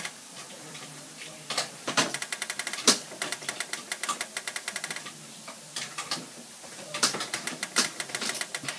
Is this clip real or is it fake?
fake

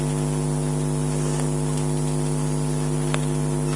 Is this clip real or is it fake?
fake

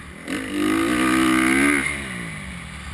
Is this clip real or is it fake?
real